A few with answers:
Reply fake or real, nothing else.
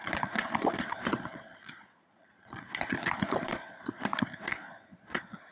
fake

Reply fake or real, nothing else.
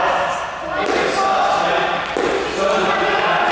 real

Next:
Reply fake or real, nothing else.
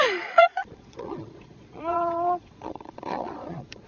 fake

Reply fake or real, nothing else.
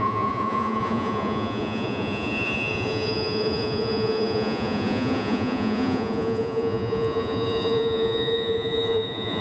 fake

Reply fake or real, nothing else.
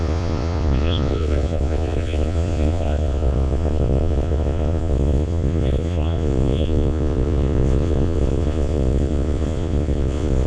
fake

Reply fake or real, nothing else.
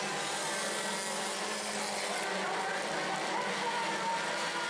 real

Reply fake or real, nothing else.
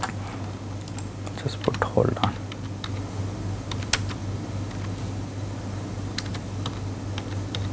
real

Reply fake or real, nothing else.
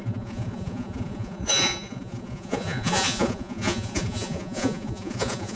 fake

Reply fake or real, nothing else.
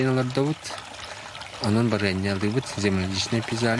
real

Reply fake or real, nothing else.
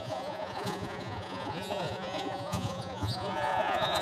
fake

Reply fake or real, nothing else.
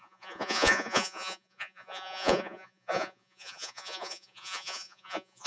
fake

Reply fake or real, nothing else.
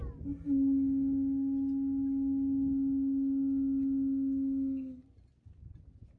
real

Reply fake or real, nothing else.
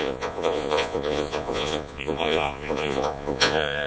fake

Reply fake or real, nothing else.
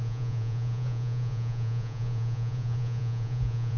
fake